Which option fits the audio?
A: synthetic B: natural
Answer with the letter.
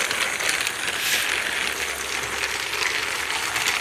B